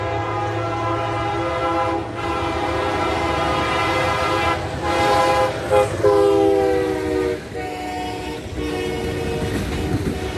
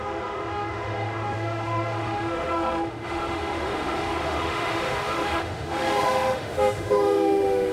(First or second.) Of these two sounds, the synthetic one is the second